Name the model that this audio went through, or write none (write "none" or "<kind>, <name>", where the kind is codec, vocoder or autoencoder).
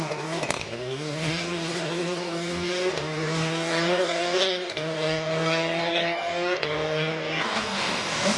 codec, DAC